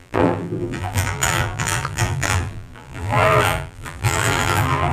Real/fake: fake